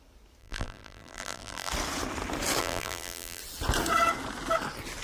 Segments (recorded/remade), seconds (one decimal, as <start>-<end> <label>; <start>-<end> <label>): 0.0-0.4 recorded; 0.4-1.7 remade; 1.7-2.6 recorded; 2.6-3.4 remade; 3.4-5.0 recorded